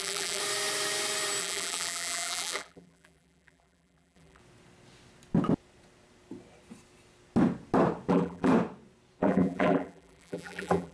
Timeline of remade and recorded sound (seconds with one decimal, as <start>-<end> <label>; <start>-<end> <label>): 0.0-0.4 remade; 0.4-1.4 recorded; 1.4-4.4 remade; 4.4-8.1 recorded; 8.1-8.5 remade; 8.5-9.2 recorded; 9.2-10.9 remade